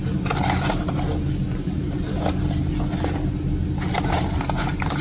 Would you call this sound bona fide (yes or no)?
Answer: yes